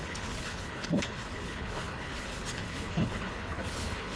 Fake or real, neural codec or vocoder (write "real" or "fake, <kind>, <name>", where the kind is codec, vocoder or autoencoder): fake, codec, HILCodec